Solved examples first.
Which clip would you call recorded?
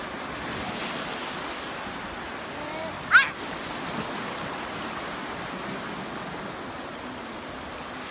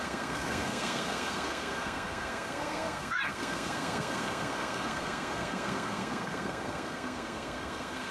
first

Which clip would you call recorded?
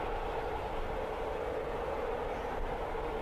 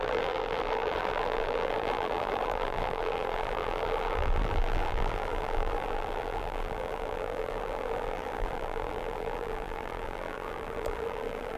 first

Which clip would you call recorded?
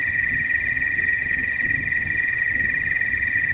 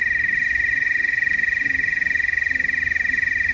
second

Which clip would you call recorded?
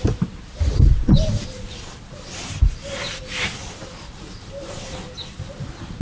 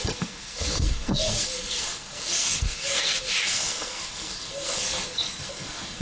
first